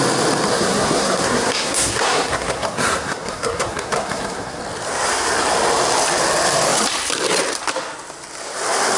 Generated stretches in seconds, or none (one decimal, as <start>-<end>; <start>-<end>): 0.5-4.6